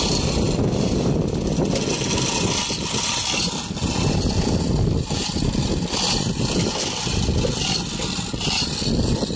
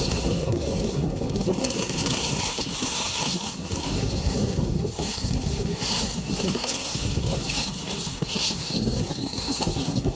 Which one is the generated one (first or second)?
second